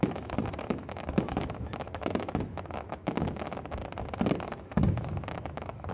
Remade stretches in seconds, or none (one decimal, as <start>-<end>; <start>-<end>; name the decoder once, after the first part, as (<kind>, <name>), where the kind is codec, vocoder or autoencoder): 0.0-3.8 (autoencoder, DAC-VAE); 4.4-5.9